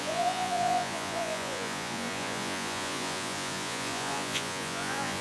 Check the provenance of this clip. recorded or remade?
remade